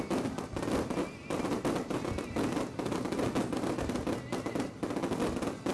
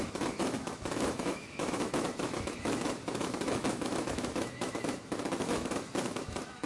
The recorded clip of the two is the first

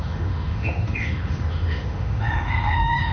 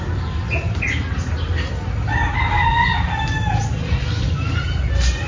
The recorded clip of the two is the second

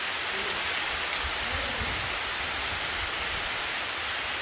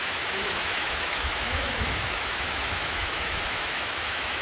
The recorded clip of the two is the first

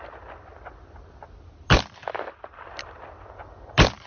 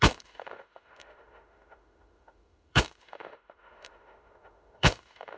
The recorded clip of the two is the first